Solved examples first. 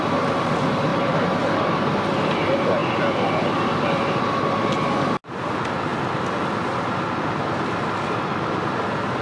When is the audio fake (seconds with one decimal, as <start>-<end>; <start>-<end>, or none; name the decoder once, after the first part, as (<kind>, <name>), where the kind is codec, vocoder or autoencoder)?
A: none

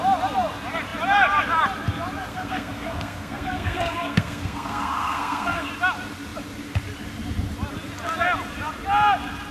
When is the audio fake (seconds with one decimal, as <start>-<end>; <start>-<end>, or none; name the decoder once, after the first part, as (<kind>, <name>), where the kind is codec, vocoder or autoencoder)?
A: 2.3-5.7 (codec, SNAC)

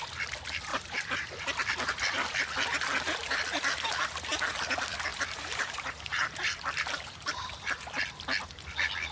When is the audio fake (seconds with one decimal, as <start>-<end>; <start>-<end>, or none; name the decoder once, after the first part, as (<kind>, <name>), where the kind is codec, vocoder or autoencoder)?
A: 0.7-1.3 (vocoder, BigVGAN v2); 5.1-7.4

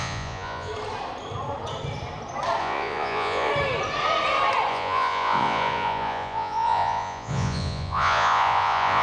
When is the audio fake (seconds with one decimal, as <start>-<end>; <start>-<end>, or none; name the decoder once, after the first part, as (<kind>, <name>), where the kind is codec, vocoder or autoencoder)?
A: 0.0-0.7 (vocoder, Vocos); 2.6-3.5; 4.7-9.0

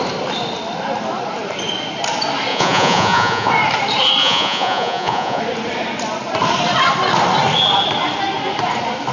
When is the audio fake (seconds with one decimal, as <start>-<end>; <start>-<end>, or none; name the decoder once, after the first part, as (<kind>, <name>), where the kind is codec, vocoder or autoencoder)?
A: 2.5-3.5 (vocoder, Vocos); 4.2-5.4

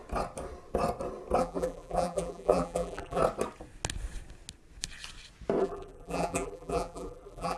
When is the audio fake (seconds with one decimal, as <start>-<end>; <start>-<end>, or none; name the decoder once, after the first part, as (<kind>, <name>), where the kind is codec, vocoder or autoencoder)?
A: 1.4-3.2 (vocoder, BigVGAN v2); 5.6-7.6

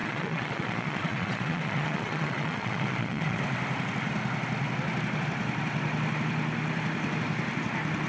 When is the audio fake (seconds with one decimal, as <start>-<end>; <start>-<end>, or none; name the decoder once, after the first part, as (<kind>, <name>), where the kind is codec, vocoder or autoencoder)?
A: 0.0-3.4 (vocoder, Vocos)

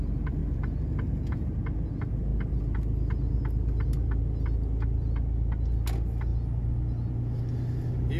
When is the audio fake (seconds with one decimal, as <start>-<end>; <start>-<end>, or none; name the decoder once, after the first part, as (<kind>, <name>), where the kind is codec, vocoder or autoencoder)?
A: none